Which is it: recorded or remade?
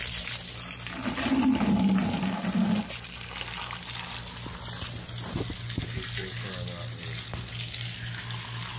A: recorded